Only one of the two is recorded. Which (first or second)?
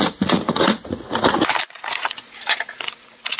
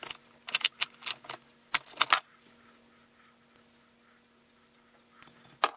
second